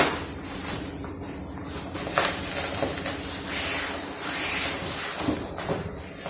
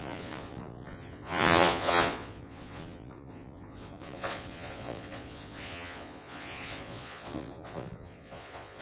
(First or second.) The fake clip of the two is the second